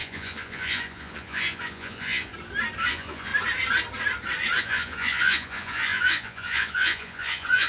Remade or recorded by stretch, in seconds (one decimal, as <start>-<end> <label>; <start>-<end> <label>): 0.0-2.3 remade; 2.3-2.9 recorded; 2.9-3.3 remade; 3.3-4.6 recorded; 4.6-7.7 remade